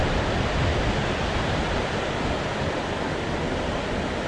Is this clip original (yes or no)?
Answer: yes